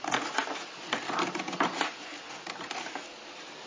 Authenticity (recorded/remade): recorded